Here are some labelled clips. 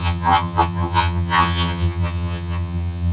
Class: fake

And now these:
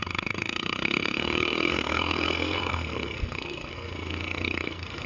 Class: fake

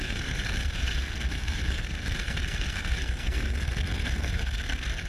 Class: fake